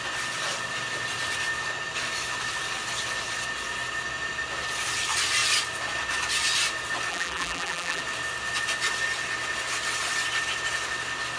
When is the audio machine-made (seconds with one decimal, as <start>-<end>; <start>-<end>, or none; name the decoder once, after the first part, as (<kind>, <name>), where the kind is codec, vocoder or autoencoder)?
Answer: 7.1-8.0 (vocoder, BigVGAN v2)